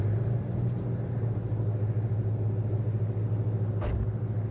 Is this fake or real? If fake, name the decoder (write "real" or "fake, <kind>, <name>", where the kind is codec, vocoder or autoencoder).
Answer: real